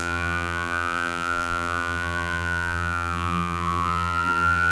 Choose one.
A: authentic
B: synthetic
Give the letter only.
B